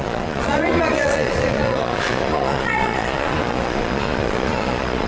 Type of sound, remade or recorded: remade